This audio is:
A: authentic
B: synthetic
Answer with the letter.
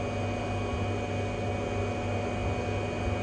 A